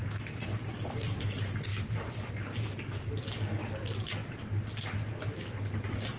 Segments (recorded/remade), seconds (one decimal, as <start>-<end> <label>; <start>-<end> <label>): 0.0-6.2 recorded